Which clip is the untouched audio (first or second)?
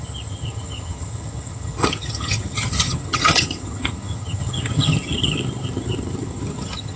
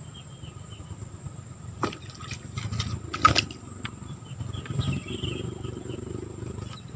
second